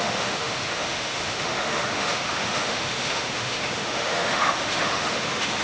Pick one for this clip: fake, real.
fake